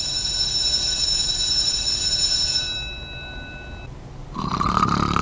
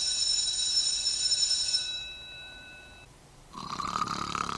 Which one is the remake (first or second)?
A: second